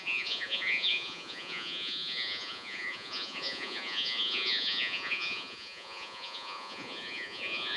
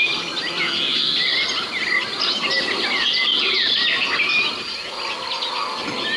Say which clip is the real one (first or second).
second